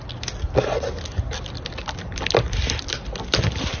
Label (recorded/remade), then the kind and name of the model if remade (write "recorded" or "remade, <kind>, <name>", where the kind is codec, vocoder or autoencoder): recorded